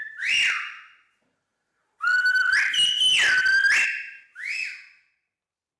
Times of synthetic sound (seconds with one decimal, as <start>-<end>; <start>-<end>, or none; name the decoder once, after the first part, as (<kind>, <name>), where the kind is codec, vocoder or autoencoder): 4.3-5.8 (vocoder, BigVGAN v2)